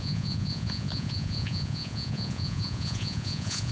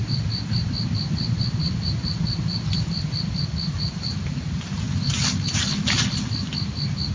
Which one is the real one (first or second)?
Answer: second